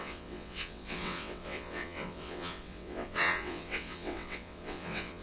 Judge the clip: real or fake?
fake